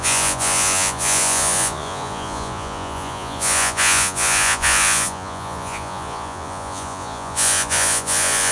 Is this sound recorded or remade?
remade